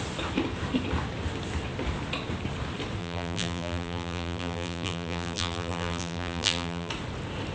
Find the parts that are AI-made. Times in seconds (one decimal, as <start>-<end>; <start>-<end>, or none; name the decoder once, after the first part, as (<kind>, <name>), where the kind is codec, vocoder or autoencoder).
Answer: 3.0-6.9 (vocoder, BigVGAN v2)